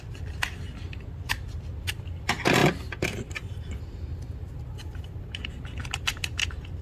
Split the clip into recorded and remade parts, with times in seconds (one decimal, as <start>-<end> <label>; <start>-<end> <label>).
0.0-6.8 recorded